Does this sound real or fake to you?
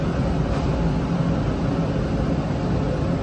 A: real